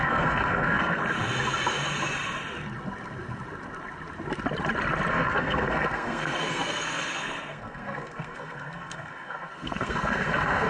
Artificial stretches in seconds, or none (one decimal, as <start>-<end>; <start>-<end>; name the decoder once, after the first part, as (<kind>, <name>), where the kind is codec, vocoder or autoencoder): 0.0-1.0 (codec, SNAC); 5.1-10.7